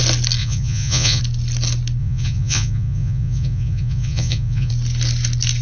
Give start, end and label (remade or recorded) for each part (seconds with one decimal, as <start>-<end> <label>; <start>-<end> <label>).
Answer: 0.0-0.4 recorded; 0.4-1.2 remade; 1.2-2.0 recorded; 2.0-4.7 remade; 4.7-5.6 recorded